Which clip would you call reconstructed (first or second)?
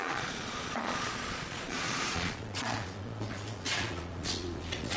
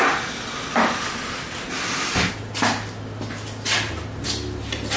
first